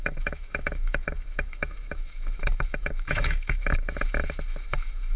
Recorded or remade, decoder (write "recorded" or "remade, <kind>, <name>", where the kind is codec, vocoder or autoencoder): remade, autoencoder, DAC-VAE